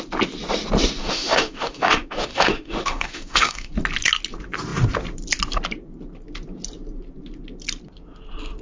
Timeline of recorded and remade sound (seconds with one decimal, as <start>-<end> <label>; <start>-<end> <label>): 0.0-1.0 recorded; 1.0-3.7 remade; 3.7-8.6 recorded